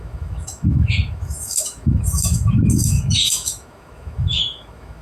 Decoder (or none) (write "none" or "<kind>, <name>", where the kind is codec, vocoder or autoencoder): autoencoder, DAC-VAE